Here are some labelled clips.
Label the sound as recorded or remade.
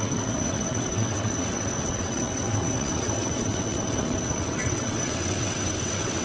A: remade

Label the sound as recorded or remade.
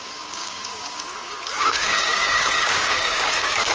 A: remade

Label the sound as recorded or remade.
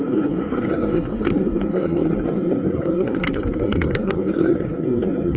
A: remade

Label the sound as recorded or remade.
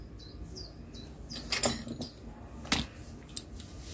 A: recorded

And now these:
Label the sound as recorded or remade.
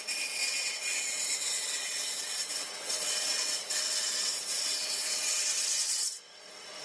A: remade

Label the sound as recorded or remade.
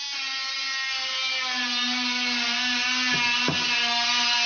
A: recorded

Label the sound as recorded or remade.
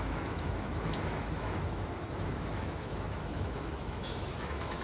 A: remade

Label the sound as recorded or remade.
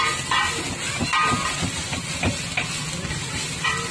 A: recorded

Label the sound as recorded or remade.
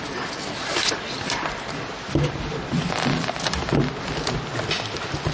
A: recorded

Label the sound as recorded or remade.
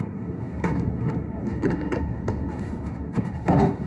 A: remade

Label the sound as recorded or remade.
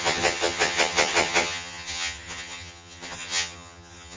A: remade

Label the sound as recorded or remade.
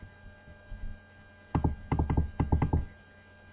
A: recorded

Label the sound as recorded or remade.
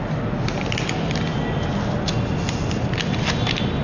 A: recorded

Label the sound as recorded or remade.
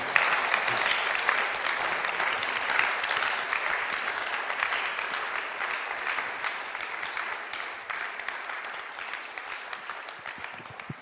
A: recorded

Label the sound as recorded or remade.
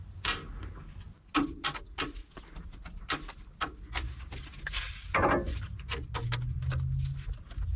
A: recorded